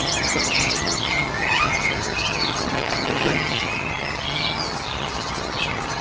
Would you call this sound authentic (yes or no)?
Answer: no